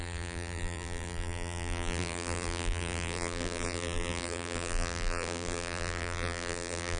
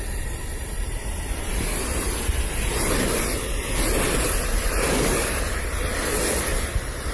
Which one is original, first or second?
second